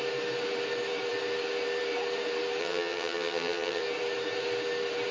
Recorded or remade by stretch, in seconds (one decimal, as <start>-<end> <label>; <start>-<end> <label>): 0.0-2.6 recorded; 2.6-3.8 remade; 3.8-5.1 recorded